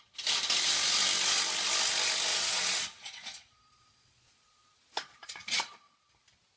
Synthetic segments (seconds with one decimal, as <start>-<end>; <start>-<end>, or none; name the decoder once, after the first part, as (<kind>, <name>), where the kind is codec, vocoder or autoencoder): 2.3-6.1 (vocoder, Vocos)